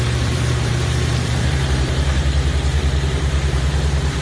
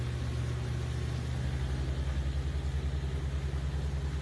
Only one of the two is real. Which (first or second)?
second